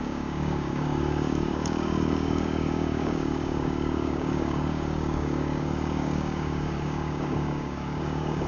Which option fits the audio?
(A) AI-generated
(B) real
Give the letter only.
A